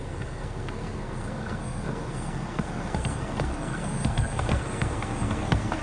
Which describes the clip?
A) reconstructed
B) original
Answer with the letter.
A